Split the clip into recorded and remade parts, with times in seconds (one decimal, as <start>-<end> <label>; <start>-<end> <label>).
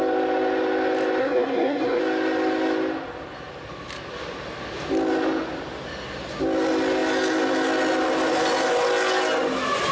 0.0-1.2 recorded; 1.2-2.0 remade; 2.0-9.9 recorded